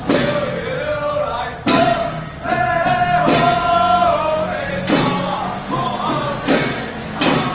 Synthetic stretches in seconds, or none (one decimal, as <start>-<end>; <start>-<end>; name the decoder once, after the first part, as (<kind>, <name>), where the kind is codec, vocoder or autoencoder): none